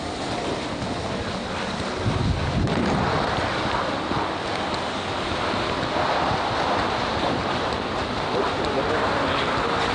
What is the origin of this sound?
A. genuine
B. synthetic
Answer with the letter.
A